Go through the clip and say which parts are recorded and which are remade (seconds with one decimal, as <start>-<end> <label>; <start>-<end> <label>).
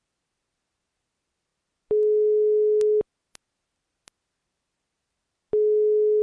0.0-6.2 recorded